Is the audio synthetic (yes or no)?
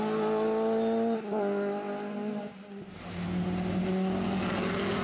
no